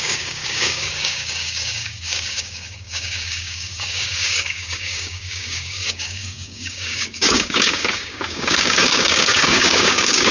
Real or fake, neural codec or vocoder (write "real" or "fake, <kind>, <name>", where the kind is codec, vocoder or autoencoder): fake, codec, DAC